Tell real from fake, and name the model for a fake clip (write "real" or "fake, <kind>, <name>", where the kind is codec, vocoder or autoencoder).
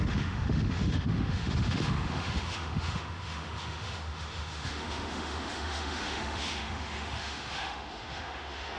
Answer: fake, autoencoder, DAC-VAE